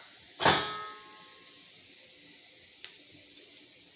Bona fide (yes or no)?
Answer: yes